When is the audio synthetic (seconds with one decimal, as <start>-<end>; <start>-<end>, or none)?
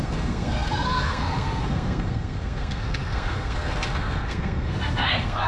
0.0-5.5